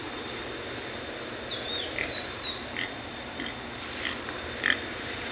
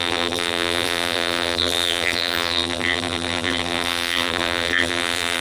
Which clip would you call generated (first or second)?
second